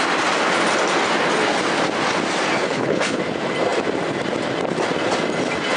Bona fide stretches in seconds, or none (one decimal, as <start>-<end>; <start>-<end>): 0.0-2.6; 3.2-5.8